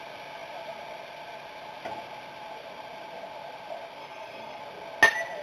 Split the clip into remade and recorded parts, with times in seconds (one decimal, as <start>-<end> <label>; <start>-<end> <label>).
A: 0.0-4.0 recorded; 4.0-4.6 remade; 4.6-5.4 recorded